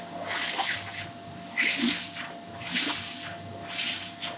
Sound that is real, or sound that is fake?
real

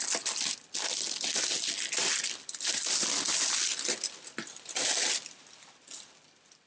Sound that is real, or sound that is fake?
real